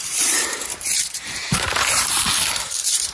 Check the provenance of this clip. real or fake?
fake